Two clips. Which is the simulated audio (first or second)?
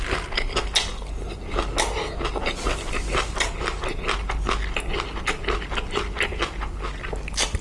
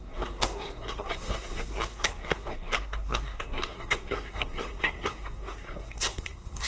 second